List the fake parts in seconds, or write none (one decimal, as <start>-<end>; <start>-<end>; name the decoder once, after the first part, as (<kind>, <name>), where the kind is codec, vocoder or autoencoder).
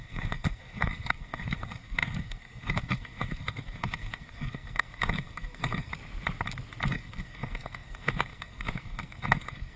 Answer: 0.0-5.9 (codec, SNAC); 6.9-9.8